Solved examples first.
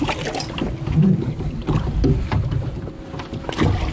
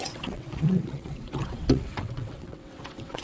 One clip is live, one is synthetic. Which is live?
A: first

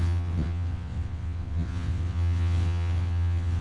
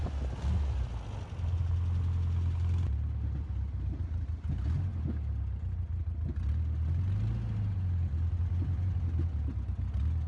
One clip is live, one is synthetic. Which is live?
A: second